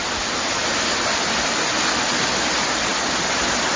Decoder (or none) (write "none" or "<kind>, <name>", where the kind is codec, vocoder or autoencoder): none